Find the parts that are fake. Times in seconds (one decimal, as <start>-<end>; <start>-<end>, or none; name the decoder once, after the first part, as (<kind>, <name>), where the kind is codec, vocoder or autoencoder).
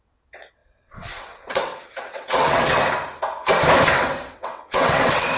0.0-2.8 (vocoder, WaveNeXt); 3.9-5.4